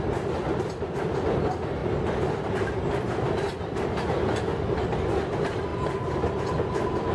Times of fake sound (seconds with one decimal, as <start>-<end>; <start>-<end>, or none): none